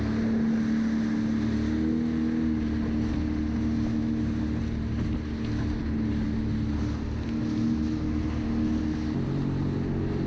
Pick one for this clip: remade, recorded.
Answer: recorded